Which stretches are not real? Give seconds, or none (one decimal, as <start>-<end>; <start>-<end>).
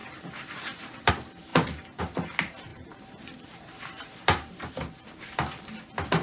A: 0.0-1.1; 1.5-2.0; 2.7-5.1